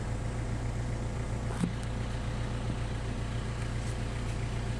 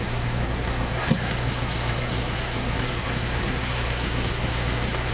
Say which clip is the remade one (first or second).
second